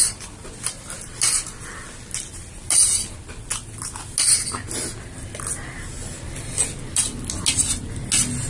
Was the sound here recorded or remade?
recorded